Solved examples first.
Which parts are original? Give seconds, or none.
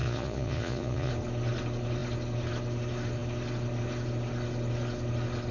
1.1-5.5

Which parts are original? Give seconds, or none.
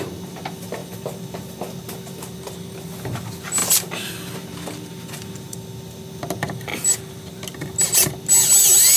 0.0-9.0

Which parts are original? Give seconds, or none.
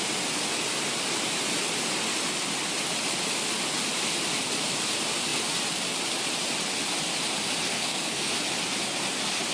0.0-7.7; 8.3-9.5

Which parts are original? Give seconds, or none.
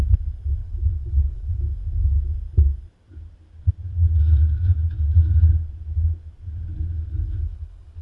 0.0-0.6; 1.6-7.1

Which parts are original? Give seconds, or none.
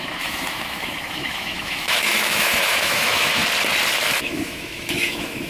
3.4-4.2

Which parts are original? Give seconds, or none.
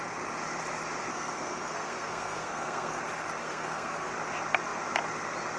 0.0-1.1; 3.0-3.4; 4.1-5.6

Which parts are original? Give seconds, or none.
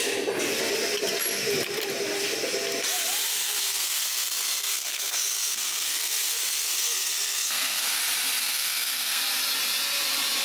0.0-3.3; 8.0-8.4; 9.2-10.4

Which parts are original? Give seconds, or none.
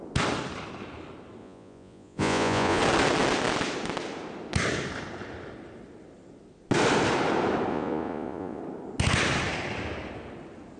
0.0-1.4; 2.8-7.7; 8.6-10.8